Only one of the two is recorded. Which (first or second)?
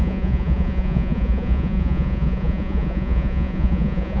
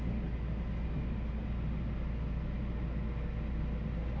second